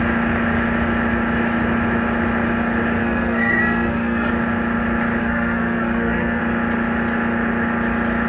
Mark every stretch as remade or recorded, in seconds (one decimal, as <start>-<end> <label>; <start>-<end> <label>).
0.0-3.0 recorded; 3.0-4.3 remade; 4.3-5.2 recorded; 5.2-6.4 remade; 6.4-8.3 recorded